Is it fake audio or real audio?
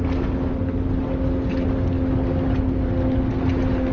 real